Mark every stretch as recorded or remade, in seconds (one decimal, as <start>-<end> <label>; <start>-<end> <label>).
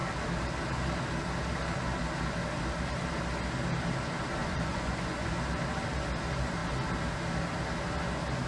0.0-4.4 recorded; 4.4-5.4 remade; 5.4-8.5 recorded